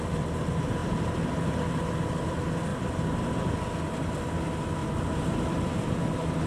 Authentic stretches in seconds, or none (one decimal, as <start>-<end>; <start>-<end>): 0.0-2.7; 3.6-4.8; 6.0-6.5